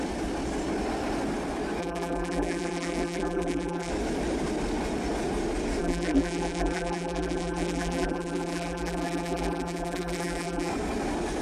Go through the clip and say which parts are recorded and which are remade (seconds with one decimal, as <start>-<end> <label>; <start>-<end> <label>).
0.0-1.8 recorded; 1.8-3.9 remade; 3.9-5.8 recorded; 5.8-10.7 remade; 10.7-11.4 recorded